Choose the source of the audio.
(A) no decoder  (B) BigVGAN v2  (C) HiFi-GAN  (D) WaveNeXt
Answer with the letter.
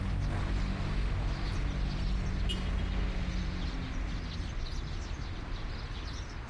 A